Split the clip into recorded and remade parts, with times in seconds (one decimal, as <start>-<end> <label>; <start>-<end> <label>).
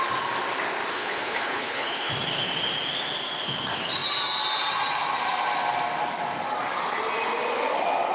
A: 0.0-0.9 recorded; 0.9-2.1 remade; 2.1-8.1 recorded